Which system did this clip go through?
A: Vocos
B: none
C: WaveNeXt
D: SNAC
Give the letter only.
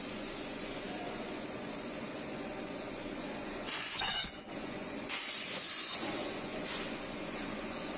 A